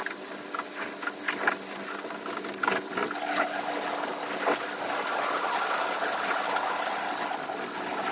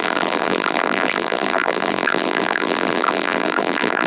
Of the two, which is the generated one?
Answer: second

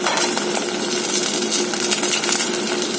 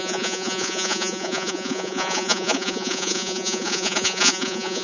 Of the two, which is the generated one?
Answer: second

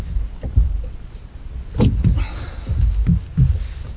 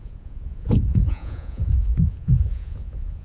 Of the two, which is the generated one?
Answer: second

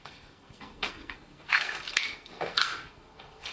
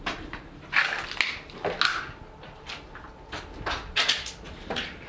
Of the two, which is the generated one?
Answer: first